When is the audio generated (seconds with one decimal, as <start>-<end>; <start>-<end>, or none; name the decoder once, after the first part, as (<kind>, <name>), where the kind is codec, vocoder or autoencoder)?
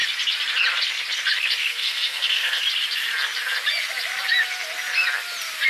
1.7-2.6 (codec, SNAC)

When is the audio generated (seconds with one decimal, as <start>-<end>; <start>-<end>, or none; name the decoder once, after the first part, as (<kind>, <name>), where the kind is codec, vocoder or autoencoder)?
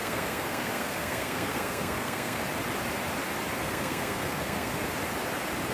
0.0-2.4 (codec, SNAC); 3.6-4.7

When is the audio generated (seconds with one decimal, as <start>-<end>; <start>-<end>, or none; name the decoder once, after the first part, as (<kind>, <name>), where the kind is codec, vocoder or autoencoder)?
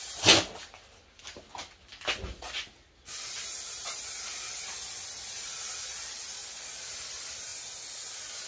none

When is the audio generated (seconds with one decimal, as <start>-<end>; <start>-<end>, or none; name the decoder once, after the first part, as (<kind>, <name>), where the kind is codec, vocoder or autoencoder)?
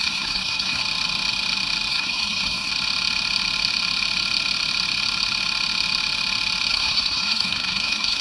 0.0-0.8 (codec, SNAC); 1.9-2.7; 6.7-8.2